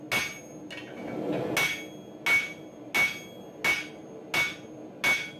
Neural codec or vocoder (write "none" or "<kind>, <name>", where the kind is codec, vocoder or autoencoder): none